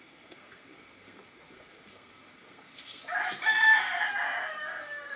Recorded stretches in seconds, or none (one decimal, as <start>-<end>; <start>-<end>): 3.0-4.5